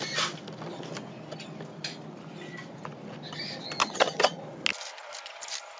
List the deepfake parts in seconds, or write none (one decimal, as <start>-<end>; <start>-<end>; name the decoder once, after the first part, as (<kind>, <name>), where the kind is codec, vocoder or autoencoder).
3.8-4.4 (vocoder, HiFi-GAN)